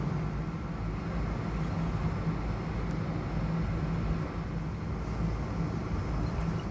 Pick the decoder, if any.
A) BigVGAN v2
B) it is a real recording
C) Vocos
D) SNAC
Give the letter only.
B